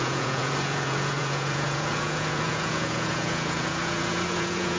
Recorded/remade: remade